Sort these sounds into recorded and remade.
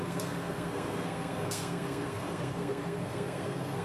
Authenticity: remade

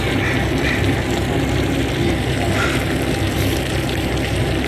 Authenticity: recorded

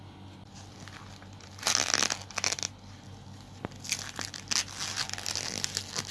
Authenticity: recorded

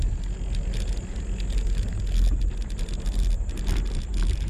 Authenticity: recorded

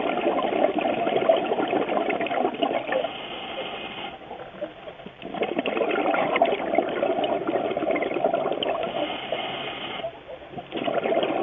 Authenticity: recorded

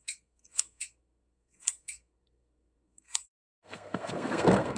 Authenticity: remade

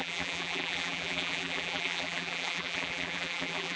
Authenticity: remade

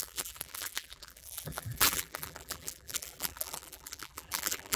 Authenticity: remade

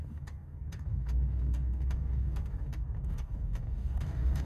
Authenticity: remade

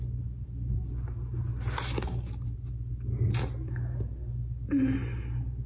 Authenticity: recorded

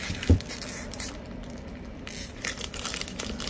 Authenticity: remade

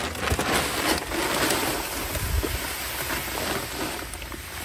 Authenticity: recorded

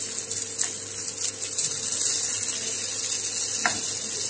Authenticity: recorded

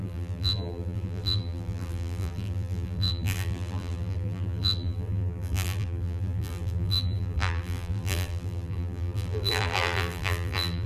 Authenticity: remade